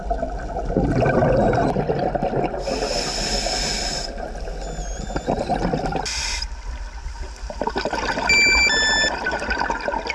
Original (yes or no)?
yes